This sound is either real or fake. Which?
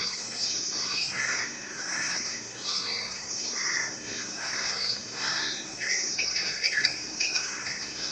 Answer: fake